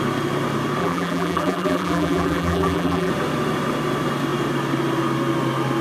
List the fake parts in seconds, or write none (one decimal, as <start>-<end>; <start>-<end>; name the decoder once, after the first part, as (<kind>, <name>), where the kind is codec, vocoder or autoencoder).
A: 0.8-3.1 (vocoder, BigVGAN v2)